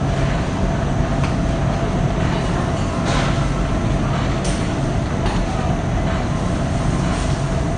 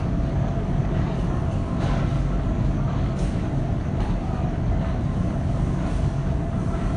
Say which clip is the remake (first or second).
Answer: second